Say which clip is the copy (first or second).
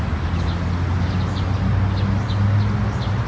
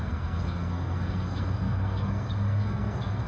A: second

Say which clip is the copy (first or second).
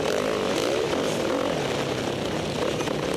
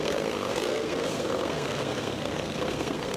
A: second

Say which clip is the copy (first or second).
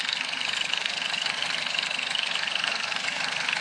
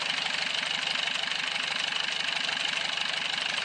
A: first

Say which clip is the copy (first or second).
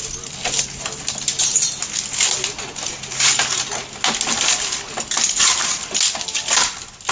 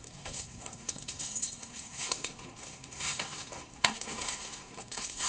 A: second